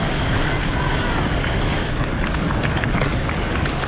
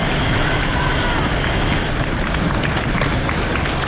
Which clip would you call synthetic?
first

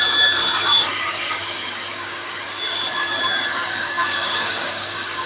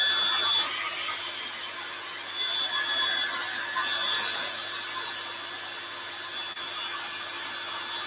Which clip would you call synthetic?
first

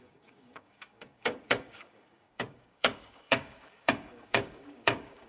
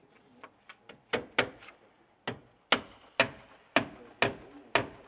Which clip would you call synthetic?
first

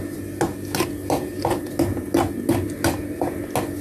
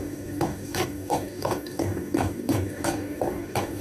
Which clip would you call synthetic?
second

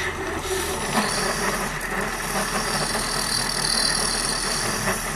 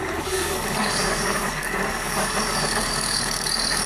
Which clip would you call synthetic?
second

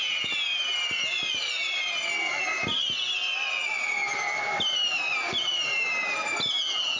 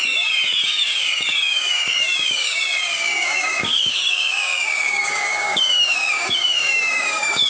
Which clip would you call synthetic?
second